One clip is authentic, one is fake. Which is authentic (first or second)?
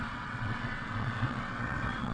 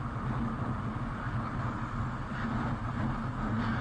second